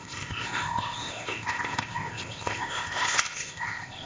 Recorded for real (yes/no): no